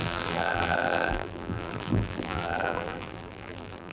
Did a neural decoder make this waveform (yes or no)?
yes